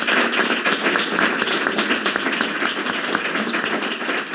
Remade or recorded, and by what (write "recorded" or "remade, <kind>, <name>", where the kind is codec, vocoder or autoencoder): remade, vocoder, BigVGAN v2